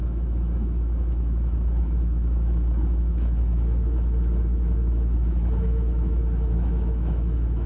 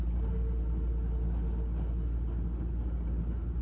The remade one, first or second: first